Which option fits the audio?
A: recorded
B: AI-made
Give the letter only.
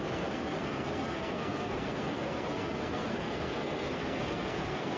B